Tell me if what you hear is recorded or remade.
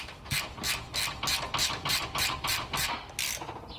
recorded